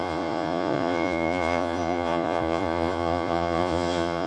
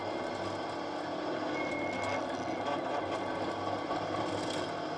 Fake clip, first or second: first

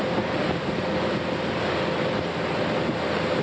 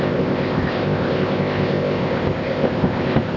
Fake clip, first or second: second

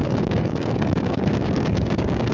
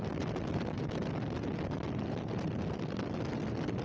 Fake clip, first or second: first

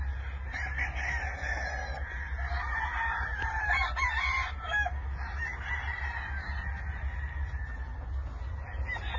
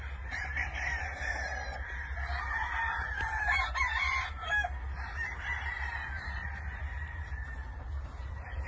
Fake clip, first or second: second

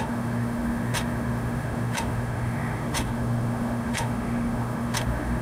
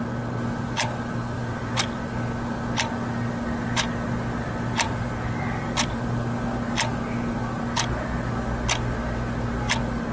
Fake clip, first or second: first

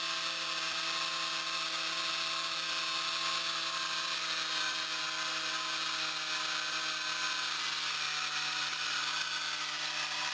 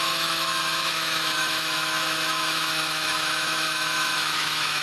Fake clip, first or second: second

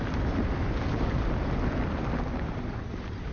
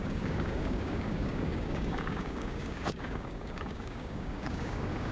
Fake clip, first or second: second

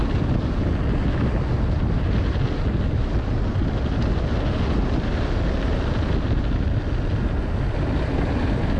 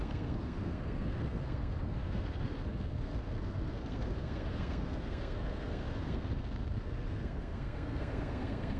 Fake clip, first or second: second